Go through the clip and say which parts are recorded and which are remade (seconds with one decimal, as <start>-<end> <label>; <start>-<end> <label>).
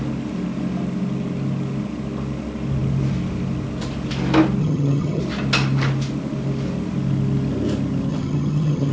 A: 0.0-4.6 recorded; 4.6-5.2 remade; 5.2-8.1 recorded; 8.1-8.9 remade